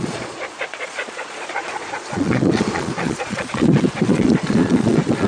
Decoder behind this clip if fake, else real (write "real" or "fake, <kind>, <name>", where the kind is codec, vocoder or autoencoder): fake, vocoder, Vocos